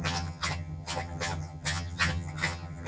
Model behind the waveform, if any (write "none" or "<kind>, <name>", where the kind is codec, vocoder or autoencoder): vocoder, HiFi-GAN